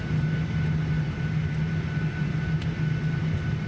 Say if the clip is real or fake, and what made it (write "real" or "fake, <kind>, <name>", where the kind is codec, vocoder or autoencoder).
real